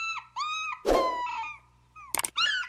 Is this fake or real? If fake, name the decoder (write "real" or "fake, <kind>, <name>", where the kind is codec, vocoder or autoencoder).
real